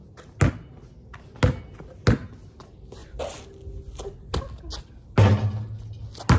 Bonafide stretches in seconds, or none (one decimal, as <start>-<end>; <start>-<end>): 0.0-6.4